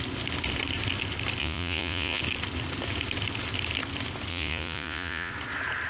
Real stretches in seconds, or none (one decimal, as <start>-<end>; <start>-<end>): 0.0-1.4; 2.2-4.3; 5.3-5.9